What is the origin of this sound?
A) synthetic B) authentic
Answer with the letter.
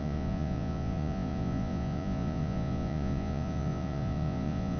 A